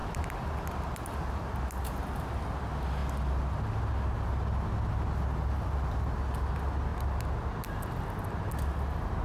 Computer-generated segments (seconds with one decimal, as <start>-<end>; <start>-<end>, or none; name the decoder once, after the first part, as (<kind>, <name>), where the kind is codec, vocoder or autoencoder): none